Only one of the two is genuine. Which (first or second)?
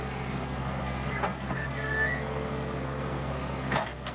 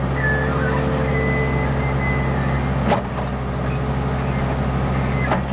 second